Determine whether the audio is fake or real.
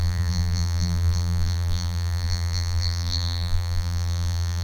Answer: fake